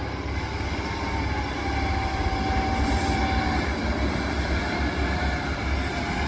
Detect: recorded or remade recorded